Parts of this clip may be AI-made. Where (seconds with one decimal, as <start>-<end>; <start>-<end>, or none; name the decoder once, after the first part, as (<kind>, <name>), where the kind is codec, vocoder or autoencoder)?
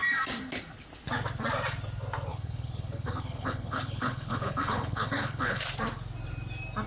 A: 2.3-5.6 (codec, HILCodec)